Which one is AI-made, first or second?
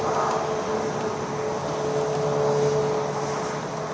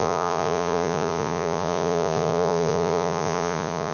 second